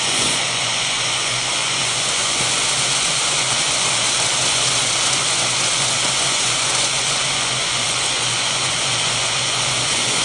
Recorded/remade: remade